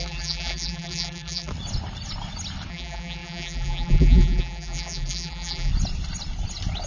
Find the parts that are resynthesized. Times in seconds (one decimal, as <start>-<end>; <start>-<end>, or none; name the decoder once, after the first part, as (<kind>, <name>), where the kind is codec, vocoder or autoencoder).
0.0-1.5 (vocoder, BigVGAN v2); 2.7-5.7